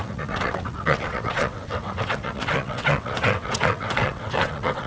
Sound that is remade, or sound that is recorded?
remade